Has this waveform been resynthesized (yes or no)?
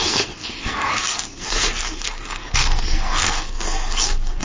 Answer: yes